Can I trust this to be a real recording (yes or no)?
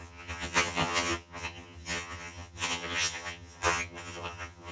no